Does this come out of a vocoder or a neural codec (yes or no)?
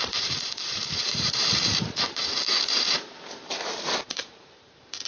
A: yes